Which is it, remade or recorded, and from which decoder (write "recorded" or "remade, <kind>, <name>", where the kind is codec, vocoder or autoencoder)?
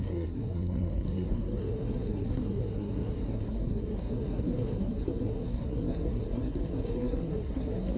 remade, codec, SNAC